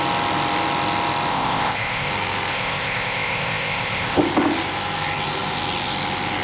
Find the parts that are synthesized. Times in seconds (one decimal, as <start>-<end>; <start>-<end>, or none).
1.3-2.1; 2.5-4.2